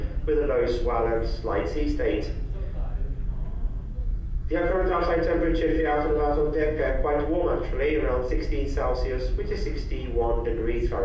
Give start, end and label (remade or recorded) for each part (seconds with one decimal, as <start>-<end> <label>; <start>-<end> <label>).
0.0-4.0 recorded; 4.0-5.1 remade; 5.1-5.7 recorded; 5.7-6.9 remade; 6.9-11.0 recorded